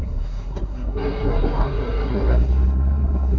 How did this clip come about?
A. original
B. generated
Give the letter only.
B